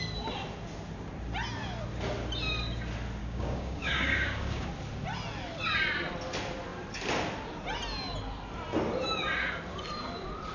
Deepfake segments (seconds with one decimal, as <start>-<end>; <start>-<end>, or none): 3.2-4.7